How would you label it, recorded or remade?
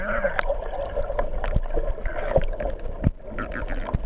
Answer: recorded